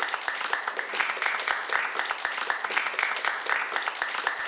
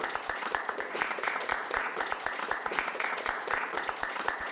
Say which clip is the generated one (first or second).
second